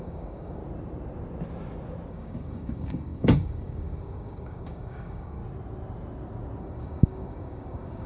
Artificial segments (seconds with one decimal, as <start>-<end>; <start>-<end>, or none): 0.0-0.6; 2.1-5.4; 6.6-8.1